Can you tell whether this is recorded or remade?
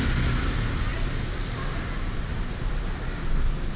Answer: recorded